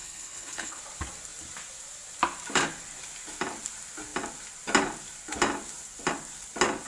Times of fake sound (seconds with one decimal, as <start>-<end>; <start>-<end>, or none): 0.0-0.8